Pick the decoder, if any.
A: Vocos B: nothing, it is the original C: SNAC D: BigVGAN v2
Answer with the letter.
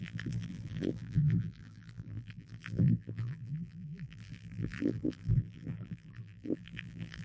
D